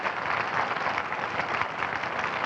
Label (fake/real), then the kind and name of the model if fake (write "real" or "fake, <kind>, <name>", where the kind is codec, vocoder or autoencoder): real